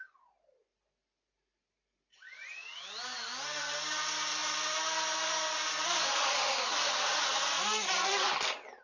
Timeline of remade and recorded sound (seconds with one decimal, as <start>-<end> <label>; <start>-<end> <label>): 0.0-8.8 recorded